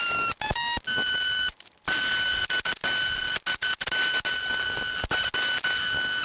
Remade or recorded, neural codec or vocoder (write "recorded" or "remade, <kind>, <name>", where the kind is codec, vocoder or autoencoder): recorded